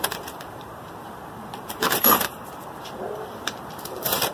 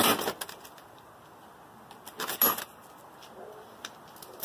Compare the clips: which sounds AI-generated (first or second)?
first